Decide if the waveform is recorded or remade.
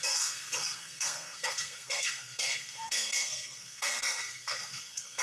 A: remade